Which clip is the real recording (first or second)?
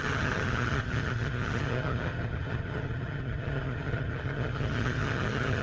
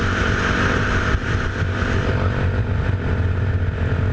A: second